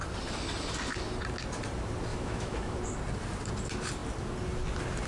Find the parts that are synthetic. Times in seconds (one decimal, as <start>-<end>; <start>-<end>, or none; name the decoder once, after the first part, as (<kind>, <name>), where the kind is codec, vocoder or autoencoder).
2.1-2.8 (autoencoder, DAC-VAE)